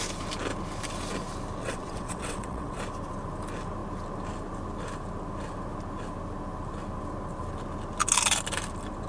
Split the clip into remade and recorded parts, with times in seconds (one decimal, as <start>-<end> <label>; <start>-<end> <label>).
0.0-1.6 recorded; 1.6-2.8 remade; 2.8-9.1 recorded